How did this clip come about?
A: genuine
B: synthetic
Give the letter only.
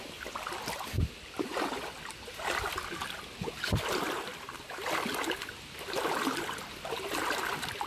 A